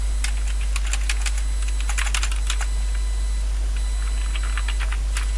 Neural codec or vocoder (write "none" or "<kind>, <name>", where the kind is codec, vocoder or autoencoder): none